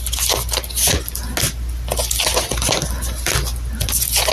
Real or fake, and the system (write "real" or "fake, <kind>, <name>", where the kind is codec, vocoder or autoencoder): real